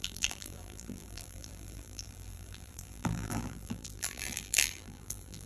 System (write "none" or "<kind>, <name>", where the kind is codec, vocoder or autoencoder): vocoder, BigVGAN v2